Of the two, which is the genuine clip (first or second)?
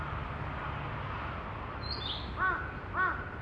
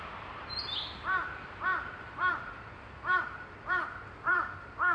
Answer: first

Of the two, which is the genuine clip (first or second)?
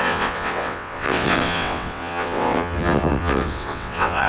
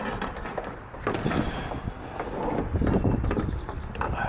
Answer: second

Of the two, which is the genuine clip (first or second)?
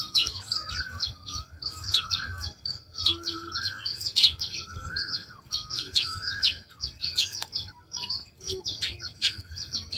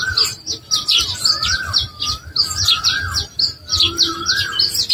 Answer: second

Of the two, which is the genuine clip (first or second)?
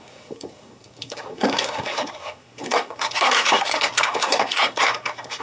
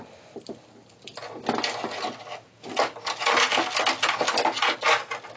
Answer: second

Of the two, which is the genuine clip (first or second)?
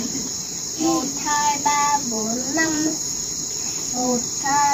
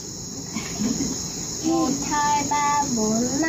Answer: second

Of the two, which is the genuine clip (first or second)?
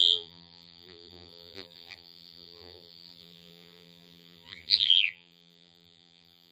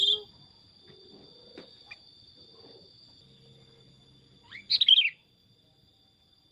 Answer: second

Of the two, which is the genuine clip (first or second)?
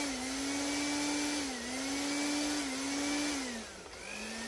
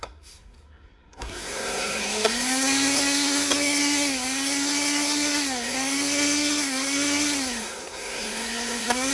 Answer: first